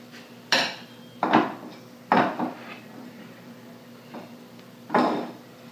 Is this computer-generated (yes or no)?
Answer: yes